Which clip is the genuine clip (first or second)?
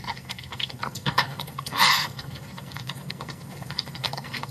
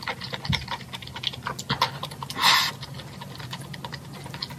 second